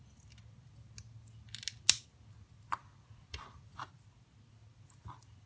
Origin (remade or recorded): recorded